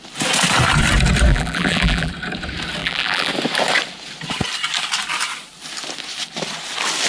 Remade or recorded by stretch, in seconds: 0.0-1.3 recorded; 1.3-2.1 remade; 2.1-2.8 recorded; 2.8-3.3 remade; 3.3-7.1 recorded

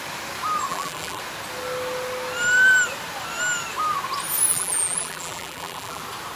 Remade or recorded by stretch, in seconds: 0.0-0.7 recorded; 0.7-1.2 remade; 1.2-4.5 recorded; 4.5-6.0 remade; 6.0-6.4 recorded

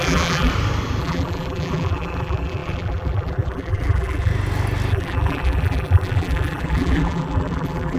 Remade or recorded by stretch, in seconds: 0.0-0.5 remade; 0.5-1.0 recorded; 1.0-4.3 remade; 4.3-4.9 recorded; 4.9-8.0 remade

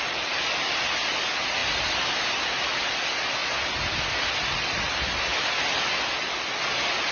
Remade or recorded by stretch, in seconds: 0.0-7.1 recorded

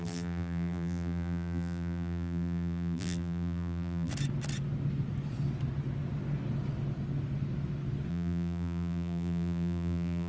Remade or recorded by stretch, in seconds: 0.0-4.1 remade; 4.1-8.1 recorded; 8.1-10.3 remade

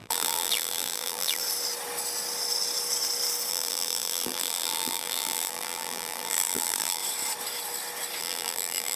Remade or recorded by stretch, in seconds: 0.0-1.4 remade; 1.4-3.5 recorded; 3.5-7.0 remade; 7.0-8.2 recorded; 8.2-9.0 remade

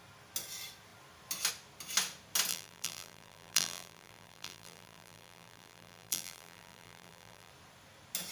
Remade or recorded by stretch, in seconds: 0.0-2.5 recorded; 2.5-7.5 remade; 7.5-8.3 recorded